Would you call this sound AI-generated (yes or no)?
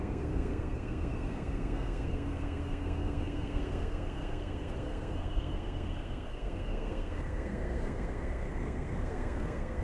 yes